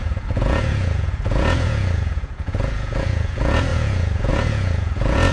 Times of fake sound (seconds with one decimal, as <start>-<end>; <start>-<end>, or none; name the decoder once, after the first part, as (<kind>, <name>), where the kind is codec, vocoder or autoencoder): 0.0-5.3 (vocoder, Vocos)